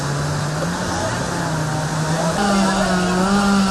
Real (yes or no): yes